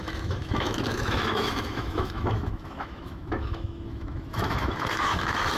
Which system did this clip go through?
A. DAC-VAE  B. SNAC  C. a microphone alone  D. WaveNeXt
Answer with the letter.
A